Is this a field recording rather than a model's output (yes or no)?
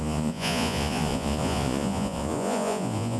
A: no